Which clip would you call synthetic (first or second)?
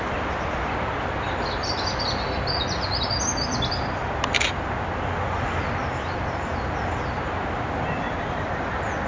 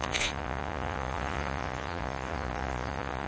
second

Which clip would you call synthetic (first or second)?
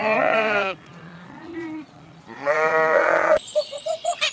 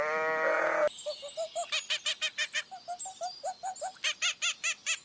first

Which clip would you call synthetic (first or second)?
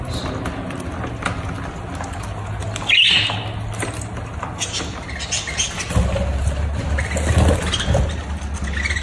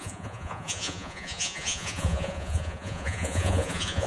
second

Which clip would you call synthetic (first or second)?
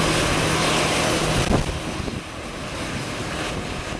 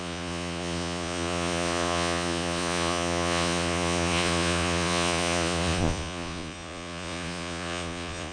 second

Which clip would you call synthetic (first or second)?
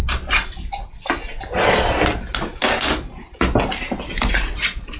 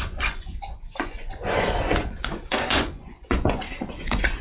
second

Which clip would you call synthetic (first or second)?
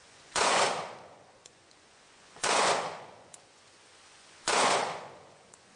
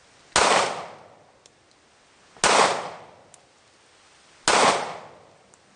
first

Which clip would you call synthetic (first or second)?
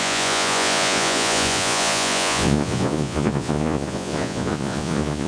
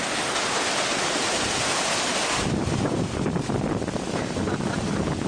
first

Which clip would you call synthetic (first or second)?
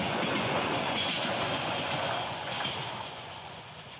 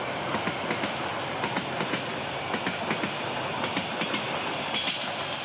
first